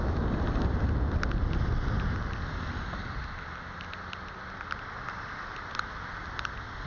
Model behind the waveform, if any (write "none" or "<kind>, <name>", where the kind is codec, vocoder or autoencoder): none